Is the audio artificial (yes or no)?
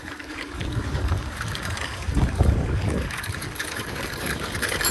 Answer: yes